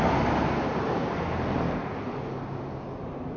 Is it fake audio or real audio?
real